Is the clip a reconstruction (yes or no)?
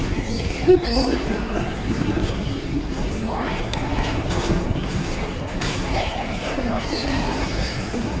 yes